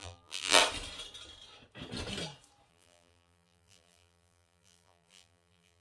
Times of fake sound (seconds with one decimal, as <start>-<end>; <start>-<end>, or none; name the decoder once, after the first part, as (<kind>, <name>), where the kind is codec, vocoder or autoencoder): 0.0-0.6 (vocoder, BigVGAN v2); 2.7-5.8